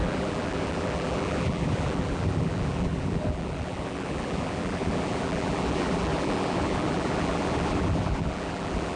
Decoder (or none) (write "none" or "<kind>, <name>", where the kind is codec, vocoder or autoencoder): vocoder, BigVGAN v2